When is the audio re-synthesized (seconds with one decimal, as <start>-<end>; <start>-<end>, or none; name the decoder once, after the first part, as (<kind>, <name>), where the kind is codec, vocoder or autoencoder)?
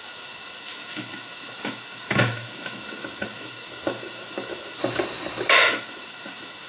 0.0-4.8 (autoencoder, DAC-VAE); 5.5-6.7